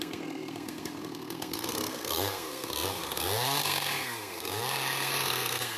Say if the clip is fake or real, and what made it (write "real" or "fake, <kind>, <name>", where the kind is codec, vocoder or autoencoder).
fake, codec, SNAC